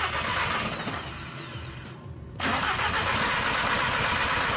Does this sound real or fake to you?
real